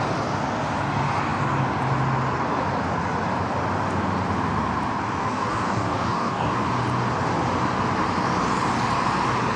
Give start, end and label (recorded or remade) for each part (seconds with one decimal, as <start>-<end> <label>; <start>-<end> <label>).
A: 0.0-5.2 recorded; 5.2-6.5 remade; 6.5-9.6 recorded